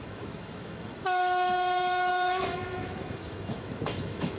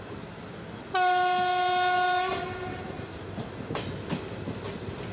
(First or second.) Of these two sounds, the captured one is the second